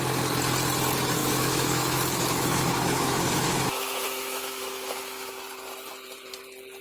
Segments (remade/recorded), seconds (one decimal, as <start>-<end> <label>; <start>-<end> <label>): 0.0-1.2 recorded; 1.2-5.3 remade; 5.3-6.8 recorded

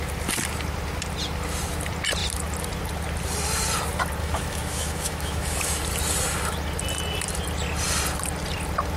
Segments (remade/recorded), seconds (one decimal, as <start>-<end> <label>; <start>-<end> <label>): 0.0-4.2 recorded; 4.2-5.8 remade; 5.8-9.0 recorded